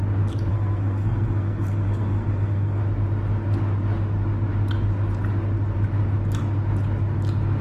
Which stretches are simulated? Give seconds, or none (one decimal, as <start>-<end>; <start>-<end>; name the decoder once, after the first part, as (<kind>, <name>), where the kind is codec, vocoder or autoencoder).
0.5-2.8 (codec, SNAC)